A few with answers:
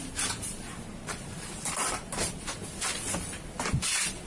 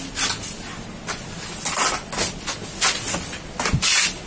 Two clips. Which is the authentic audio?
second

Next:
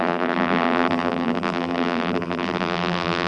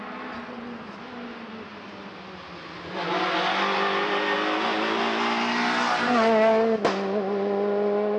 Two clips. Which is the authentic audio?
second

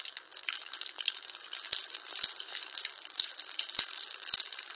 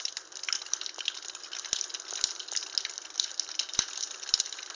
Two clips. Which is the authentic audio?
second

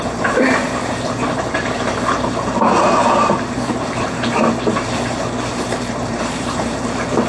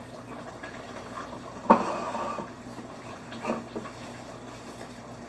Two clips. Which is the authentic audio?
second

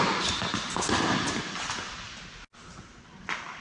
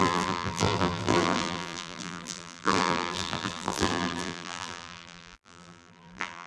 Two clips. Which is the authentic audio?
first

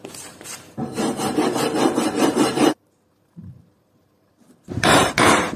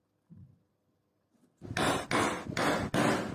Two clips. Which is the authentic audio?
second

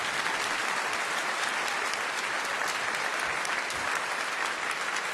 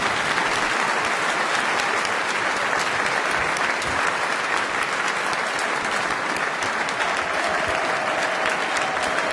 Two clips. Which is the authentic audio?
second